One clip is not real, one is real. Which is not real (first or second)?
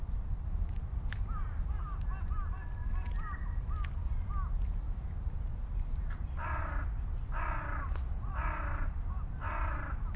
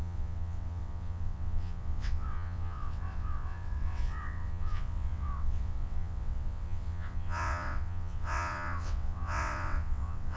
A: second